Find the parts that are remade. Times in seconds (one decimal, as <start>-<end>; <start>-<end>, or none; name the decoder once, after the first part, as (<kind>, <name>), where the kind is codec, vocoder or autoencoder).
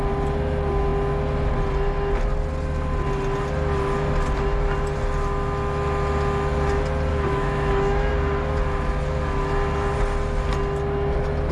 7.1-8.1 (autoencoder, DAC-VAE)